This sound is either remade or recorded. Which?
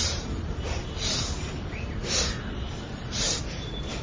remade